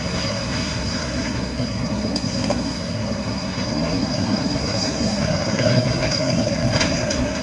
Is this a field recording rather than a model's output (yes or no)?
no